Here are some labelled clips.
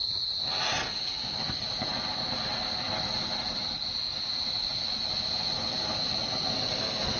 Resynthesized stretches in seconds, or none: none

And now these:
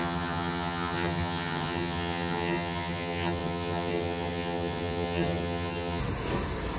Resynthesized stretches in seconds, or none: 0.0-6.0 (vocoder, HiFi-GAN)

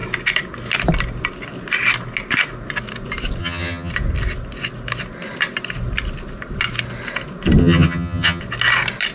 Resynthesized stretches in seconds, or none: 3.4-3.9 (vocoder, HiFi-GAN); 7.6-8.4

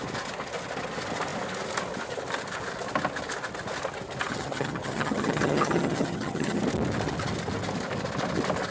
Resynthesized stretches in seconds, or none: 4.3-6.6 (vocoder, HiFi-GAN)

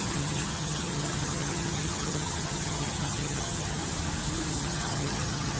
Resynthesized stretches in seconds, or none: 0.0-3.8 (vocoder, HiFi-GAN); 4.5-5.6

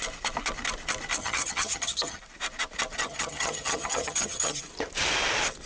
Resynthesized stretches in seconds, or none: 1.2-2.2 (vocoder, HiFi-GAN); 3.0-4.6

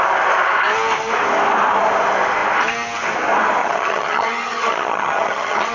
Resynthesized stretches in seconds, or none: 3.6-5.7 (vocoder, HiFi-GAN)